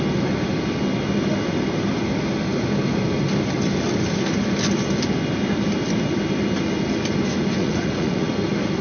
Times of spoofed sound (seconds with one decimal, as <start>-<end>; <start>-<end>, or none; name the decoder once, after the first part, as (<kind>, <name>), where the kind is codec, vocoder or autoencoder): 7.6-8.3 (vocoder, Vocos)